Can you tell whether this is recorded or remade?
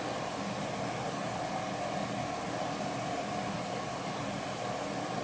recorded